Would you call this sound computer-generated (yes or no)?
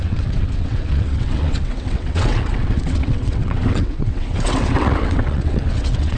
yes